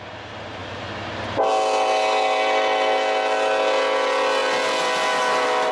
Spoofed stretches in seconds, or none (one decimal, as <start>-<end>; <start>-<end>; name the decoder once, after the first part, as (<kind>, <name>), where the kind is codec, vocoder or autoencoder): none